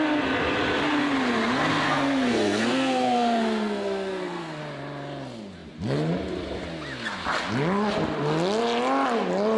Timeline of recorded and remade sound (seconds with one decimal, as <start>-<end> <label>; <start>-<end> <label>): 0.0-1.7 recorded; 1.7-4.6 remade; 4.6-9.6 recorded

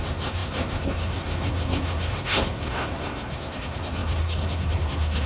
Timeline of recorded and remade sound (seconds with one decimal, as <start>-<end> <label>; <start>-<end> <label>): 0.0-5.3 remade